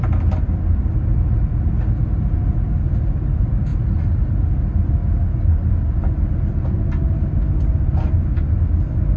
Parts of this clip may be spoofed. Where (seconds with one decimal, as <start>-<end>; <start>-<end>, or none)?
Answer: none